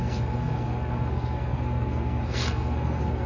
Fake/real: fake